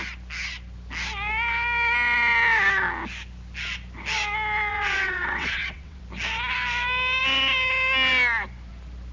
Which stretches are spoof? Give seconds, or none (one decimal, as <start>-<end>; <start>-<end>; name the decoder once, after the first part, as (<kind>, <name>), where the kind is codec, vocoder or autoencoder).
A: 4.7-6.0 (vocoder, WaveNeXt)